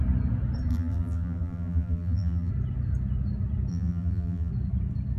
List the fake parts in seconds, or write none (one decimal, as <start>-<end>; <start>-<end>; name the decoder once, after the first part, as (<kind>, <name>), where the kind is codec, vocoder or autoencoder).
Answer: 0.7-2.5 (vocoder, BigVGAN v2); 3.7-4.5